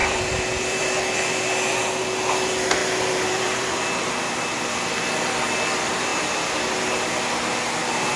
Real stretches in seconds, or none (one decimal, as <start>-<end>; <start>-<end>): 0.8-2.8; 4.5-6.1; 7.1-8.2